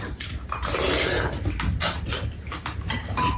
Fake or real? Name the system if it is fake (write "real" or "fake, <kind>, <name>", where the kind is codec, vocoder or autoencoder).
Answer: fake, vocoder, BigVGAN v2